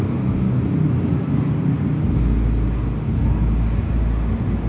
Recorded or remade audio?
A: recorded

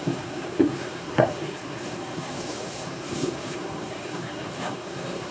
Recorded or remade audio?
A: remade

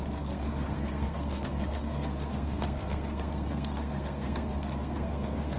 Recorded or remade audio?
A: remade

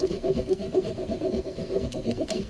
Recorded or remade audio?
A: remade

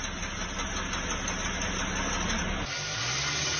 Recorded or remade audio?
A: recorded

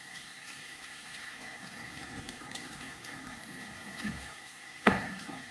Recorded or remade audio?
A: remade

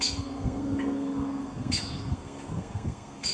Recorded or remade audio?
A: remade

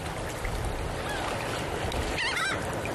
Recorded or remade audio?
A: recorded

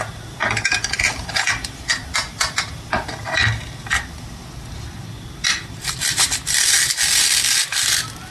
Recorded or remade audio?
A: recorded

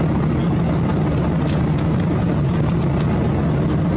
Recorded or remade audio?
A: recorded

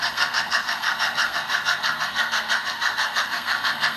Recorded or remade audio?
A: remade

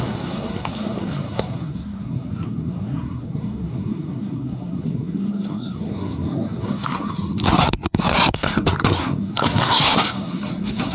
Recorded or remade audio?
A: remade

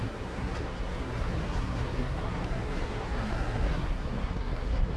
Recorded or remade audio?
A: remade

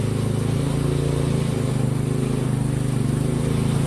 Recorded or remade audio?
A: recorded